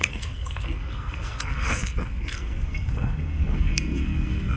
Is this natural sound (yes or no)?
no